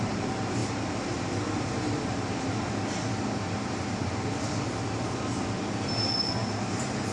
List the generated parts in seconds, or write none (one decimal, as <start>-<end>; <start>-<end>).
0.6-2.7